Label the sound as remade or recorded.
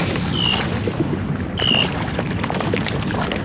recorded